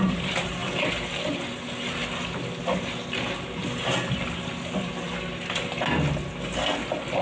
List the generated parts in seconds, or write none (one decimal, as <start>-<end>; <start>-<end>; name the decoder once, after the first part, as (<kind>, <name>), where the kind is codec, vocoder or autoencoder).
none

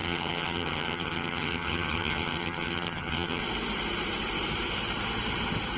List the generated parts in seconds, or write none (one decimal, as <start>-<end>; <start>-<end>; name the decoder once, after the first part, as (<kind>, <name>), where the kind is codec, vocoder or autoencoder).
0.0-3.4 (vocoder, HiFi-GAN)

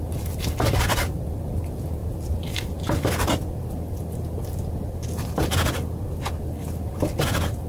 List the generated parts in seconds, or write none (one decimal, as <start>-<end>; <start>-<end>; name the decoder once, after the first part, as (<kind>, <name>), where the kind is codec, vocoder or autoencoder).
none

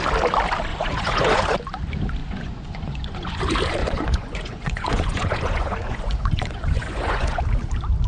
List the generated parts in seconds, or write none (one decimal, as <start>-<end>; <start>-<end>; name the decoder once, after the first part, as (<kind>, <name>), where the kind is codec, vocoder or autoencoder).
0.7-1.4 (vocoder, Vocos); 2.2-3.4; 3.8-7.4

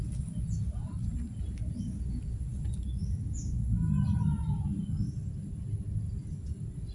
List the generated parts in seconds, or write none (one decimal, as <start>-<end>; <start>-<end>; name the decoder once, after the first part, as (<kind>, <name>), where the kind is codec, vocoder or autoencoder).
none